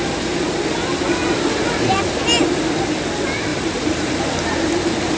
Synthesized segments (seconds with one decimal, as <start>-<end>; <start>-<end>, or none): 1.3-2.0; 3.5-4.7